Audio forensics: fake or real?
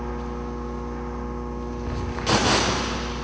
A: real